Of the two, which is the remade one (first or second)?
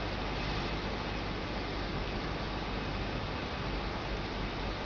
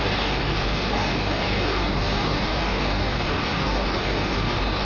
second